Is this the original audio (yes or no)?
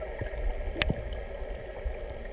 yes